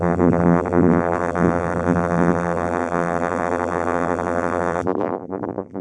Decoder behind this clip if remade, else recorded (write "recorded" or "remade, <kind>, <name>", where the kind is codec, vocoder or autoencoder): remade, vocoder, BigVGAN v2